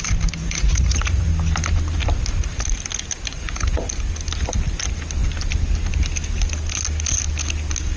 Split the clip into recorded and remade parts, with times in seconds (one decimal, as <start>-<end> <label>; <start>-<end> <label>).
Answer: 0.0-0.4 recorded; 0.4-1.3 remade; 1.3-3.3 recorded; 3.3-3.8 remade; 3.8-8.0 recorded